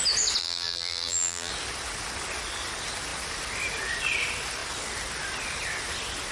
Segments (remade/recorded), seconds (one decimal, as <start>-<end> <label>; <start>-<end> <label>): 0.0-0.4 recorded; 0.4-1.5 remade; 1.5-6.3 recorded